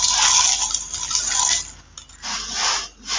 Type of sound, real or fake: real